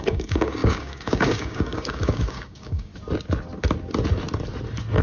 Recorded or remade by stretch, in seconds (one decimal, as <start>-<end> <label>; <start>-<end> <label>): 0.0-2.9 remade; 2.9-5.0 recorded